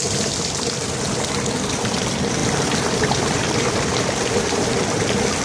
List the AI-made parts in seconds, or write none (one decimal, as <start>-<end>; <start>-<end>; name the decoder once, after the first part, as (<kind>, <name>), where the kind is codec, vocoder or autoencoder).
2.4-5.4 (vocoder, BigVGAN v2)